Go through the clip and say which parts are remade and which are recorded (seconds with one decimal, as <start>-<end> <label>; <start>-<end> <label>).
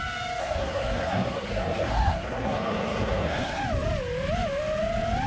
0.0-0.4 recorded; 0.4-3.6 remade; 3.6-5.3 recorded